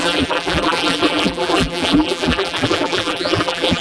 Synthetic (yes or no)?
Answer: yes